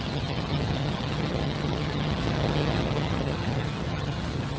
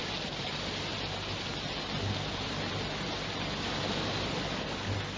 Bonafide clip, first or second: second